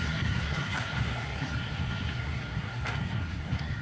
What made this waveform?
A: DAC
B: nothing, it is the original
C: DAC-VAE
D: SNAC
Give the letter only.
D